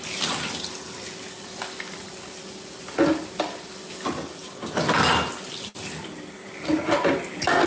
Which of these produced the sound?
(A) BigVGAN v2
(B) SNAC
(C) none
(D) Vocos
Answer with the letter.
C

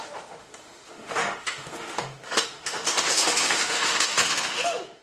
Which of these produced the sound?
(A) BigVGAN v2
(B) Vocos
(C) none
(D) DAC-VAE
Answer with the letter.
D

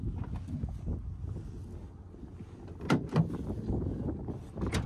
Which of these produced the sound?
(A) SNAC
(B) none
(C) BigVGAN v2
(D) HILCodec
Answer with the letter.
B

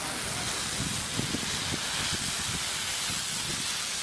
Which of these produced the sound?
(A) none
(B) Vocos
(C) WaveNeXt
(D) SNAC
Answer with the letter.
A